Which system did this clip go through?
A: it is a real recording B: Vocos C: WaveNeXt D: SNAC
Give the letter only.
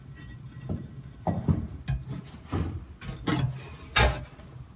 A